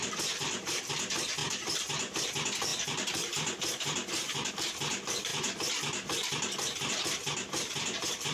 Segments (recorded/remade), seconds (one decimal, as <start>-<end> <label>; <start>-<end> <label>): 0.0-8.3 remade

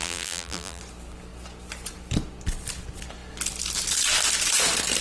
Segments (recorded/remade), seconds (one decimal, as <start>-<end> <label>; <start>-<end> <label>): 0.0-0.8 remade; 0.8-5.0 recorded

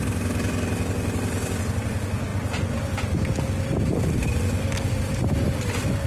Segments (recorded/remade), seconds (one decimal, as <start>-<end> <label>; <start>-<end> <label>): 0.0-6.1 recorded

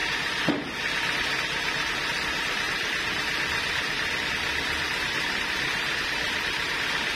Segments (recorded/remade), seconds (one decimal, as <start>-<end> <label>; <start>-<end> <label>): 0.0-7.2 recorded

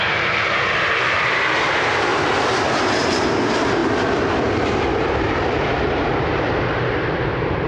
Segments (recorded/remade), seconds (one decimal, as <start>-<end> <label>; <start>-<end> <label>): 0.0-2.1 remade; 2.1-3.0 recorded; 3.0-3.8 remade; 3.8-5.0 recorded; 5.0-7.7 remade

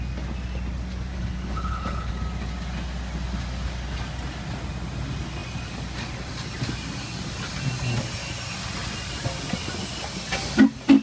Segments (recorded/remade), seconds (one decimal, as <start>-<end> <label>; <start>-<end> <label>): 0.0-1.1 recorded; 1.1-2.1 remade; 2.1-11.0 recorded

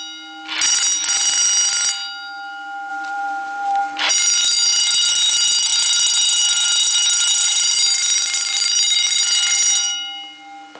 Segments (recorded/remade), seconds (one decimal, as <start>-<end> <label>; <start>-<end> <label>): 0.0-2.9 recorded; 2.9-4.1 remade; 4.1-7.4 recorded; 7.4-9.2 remade; 9.2-10.8 recorded

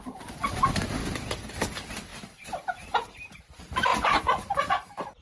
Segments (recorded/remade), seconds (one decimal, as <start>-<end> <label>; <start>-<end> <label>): 0.0-1.0 remade; 1.0-1.6 recorded; 1.6-5.2 remade